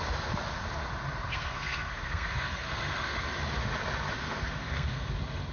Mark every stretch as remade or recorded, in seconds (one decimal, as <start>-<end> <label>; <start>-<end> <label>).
0.0-1.3 recorded; 1.3-3.2 remade; 3.2-4.2 recorded; 4.2-5.1 remade; 5.1-5.5 recorded